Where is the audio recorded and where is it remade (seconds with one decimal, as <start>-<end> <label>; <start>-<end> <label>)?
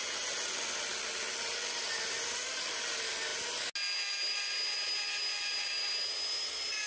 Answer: 0.0-6.9 recorded